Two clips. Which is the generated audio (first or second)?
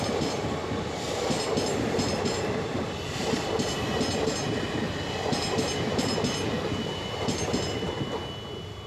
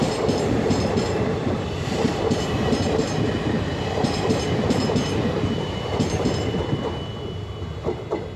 second